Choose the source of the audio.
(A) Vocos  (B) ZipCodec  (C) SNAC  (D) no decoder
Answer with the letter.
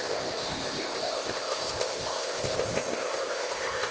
B